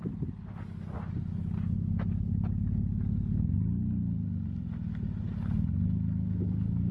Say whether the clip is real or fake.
real